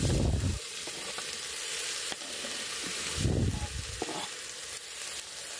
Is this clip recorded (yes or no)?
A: yes